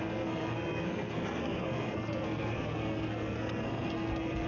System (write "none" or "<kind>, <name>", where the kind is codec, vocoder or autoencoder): codec, SNAC